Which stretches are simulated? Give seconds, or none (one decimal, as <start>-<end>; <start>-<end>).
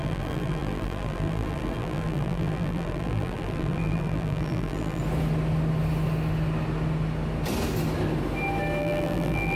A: 0.0-5.0; 8.8-9.6